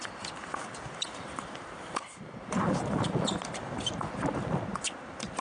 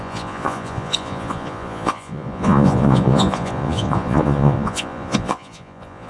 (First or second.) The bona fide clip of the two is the first